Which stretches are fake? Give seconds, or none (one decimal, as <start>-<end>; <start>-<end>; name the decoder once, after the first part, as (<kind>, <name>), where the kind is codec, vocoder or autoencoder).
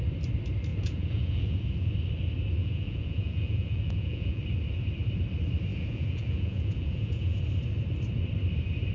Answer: 0.7-1.9 (vocoder, Vocos); 2.6-4.4; 5.7-7.4